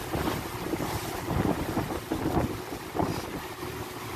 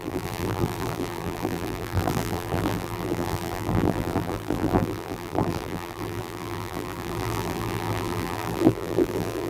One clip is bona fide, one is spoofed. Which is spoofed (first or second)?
second